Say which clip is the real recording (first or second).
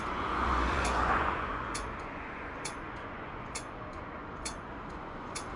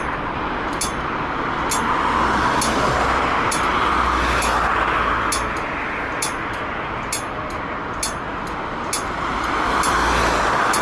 second